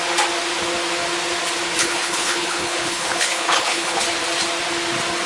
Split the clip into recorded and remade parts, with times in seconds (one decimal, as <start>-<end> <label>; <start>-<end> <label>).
0.0-1.8 recorded; 1.8-4.0 remade; 4.0-5.3 recorded